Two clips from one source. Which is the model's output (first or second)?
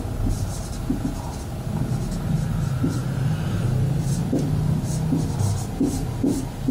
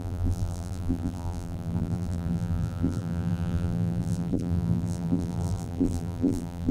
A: second